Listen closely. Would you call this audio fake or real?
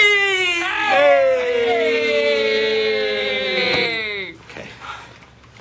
real